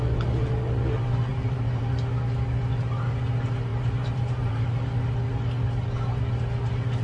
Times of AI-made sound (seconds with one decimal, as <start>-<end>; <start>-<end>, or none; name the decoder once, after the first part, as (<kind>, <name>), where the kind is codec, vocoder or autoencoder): 1.3-1.9 (vocoder, BigVGAN v2); 3.7-4.7